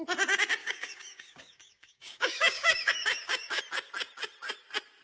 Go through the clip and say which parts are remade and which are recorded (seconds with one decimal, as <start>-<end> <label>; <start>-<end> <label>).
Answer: 0.0-0.6 recorded; 0.6-3.6 remade; 3.6-5.0 recorded